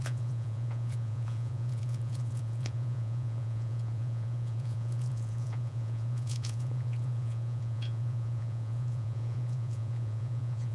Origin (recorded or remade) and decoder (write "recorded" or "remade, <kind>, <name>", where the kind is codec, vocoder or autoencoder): remade, vocoder, Vocos